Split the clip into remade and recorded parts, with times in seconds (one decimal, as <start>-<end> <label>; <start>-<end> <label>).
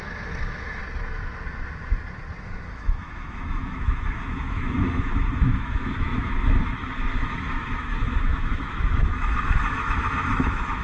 0.0-0.8 remade; 0.8-2.4 recorded; 2.4-10.8 remade